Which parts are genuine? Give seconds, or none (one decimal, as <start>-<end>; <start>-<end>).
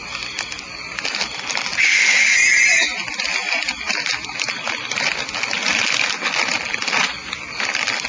0.0-8.1